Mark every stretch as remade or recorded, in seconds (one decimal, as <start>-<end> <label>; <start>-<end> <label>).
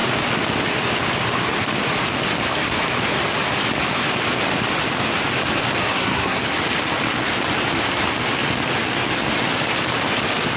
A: 0.0-5.8 recorded; 5.8-6.4 remade; 6.4-10.6 recorded